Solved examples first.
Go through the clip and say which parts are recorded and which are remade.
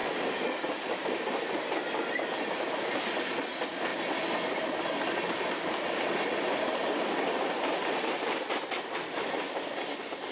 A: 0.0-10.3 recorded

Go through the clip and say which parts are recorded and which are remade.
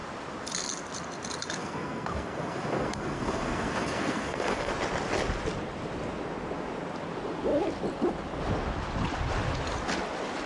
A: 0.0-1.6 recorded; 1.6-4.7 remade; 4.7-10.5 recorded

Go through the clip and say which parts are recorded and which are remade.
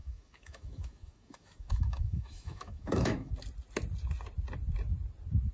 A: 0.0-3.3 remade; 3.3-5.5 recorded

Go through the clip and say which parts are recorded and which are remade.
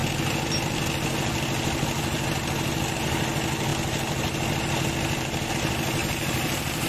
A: 0.0-6.0 recorded; 6.0-6.9 remade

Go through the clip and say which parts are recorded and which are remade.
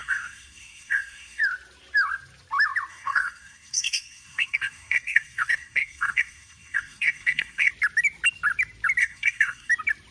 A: 0.0-1.4 remade; 1.4-2.9 recorded; 2.9-7.7 remade; 7.7-9.0 recorded; 9.0-9.7 remade; 9.7-10.1 recorded